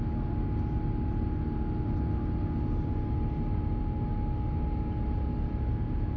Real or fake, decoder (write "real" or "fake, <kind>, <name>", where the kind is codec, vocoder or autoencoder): real